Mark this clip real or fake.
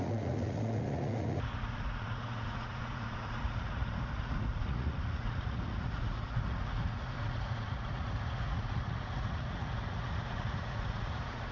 fake